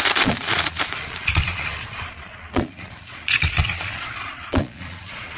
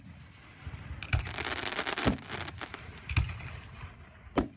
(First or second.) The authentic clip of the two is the second